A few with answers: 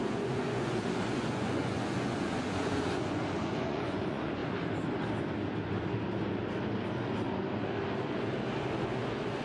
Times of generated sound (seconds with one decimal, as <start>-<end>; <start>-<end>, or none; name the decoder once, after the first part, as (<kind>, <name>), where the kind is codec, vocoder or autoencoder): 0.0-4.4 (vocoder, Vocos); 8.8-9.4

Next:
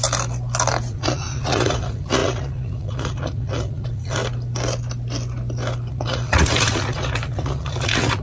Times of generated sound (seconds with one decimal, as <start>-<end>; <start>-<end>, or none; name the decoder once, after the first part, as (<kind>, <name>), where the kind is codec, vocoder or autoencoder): 0.9-4.2 (vocoder, Vocos); 5.9-8.2

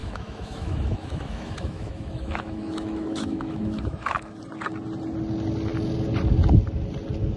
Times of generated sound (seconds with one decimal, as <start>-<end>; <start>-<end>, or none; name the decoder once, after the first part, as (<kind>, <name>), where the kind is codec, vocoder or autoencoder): 0.0-4.4 (autoencoder, DAC-VAE)

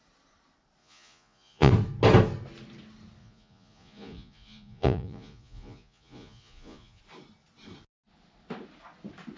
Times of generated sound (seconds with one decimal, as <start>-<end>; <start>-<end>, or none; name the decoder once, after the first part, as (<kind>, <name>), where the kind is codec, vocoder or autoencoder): 0.8-1.7 (vocoder, Vocos); 3.2-7.0

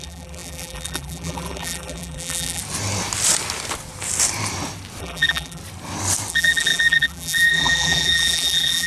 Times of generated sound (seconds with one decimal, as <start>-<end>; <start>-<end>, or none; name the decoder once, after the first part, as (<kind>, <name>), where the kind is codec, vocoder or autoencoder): 0.0-2.6 (vocoder, BigVGAN v2); 5.0-5.6; 6.3-8.9

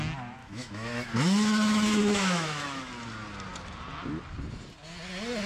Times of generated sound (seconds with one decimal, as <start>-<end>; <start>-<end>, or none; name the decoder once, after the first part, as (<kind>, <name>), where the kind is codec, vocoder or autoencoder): 0.4-2.8 (autoencoder, DAC-VAE)

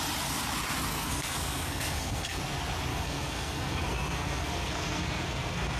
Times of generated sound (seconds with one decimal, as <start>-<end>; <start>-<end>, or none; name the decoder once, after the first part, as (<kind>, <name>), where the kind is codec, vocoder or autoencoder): 0.9-2.4 (codec, SNAC); 2.9-5.8

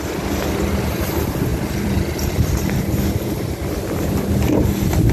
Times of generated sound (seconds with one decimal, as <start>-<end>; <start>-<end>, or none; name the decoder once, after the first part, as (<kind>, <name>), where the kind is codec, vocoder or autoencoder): 1.5-3.7 (vocoder, BigVGAN v2)